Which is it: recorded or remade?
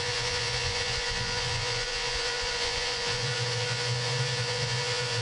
remade